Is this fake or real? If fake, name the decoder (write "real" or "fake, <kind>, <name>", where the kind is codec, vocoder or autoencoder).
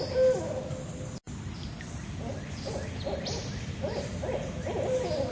real